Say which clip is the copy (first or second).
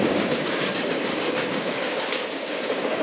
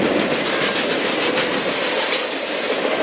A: first